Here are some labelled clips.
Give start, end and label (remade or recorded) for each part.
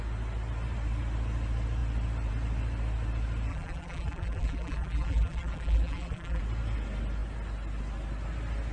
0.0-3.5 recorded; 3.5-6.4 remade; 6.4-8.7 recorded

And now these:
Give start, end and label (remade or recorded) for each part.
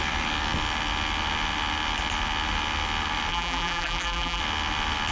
0.0-3.3 recorded; 3.3-4.4 remade; 4.4-5.1 recorded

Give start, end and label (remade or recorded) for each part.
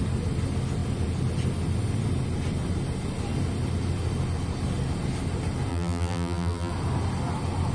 0.0-5.7 recorded; 5.7-6.7 remade; 6.7-7.7 recorded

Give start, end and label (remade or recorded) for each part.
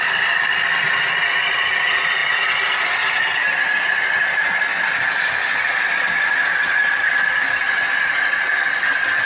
0.0-9.3 recorded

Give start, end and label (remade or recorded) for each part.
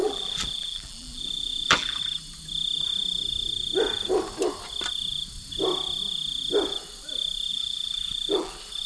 0.0-2.0 remade; 2.0-7.5 recorded; 7.5-8.5 remade; 8.5-8.9 recorded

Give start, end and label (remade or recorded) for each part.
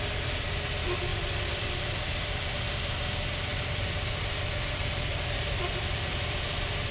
0.0-1.1 recorded; 1.1-2.1 remade; 2.1-3.5 recorded; 3.5-6.1 remade; 6.1-6.9 recorded